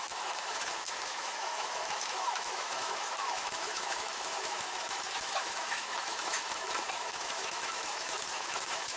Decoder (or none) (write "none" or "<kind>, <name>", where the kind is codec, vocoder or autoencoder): autoencoder, DAC-VAE